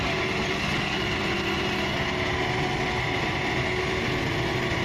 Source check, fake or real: real